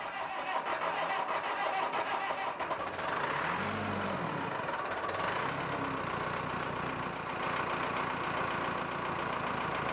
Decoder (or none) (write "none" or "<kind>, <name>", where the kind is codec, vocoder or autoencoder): none